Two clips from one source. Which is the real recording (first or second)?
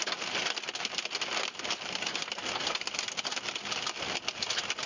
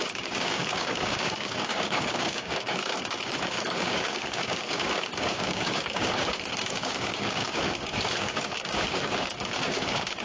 first